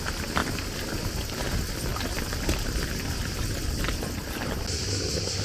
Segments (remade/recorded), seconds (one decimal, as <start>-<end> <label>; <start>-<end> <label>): 0.0-5.4 recorded